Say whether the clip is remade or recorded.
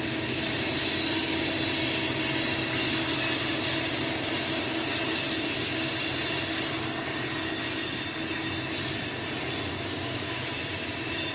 recorded